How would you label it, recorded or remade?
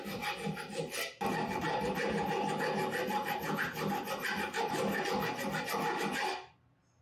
recorded